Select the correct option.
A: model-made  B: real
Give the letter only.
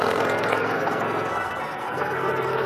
A